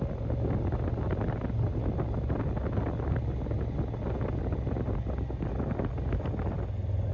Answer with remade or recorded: recorded